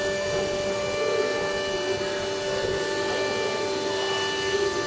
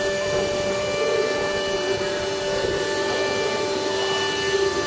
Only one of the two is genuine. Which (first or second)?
first